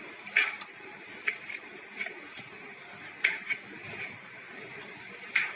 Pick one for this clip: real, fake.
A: fake